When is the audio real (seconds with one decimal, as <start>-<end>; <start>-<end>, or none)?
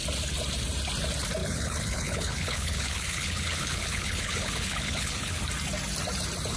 0.0-1.4; 5.4-6.6